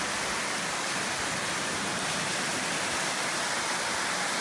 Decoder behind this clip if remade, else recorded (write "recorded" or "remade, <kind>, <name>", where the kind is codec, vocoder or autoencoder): recorded